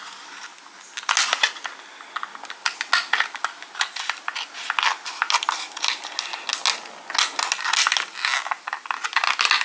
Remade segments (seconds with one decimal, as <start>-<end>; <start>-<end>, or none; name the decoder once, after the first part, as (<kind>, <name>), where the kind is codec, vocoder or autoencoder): none